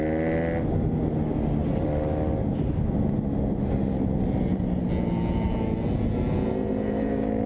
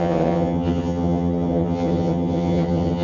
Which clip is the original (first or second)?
first